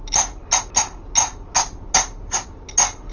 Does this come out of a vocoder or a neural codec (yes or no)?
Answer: no